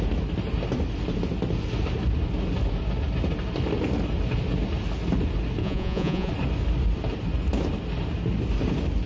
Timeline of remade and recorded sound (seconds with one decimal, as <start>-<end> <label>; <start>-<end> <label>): 0.0-5.6 recorded; 5.6-6.3 remade; 6.3-9.1 recorded